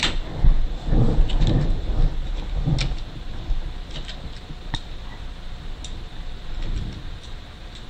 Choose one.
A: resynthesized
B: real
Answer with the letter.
B